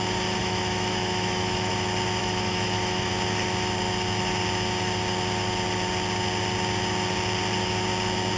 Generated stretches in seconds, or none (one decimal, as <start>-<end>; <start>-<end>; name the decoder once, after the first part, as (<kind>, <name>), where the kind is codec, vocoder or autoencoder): 0.4-1.7 (autoencoder, DAC-VAE); 2.2-3.1